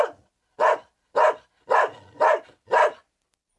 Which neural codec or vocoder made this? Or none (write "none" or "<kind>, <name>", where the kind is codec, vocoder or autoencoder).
none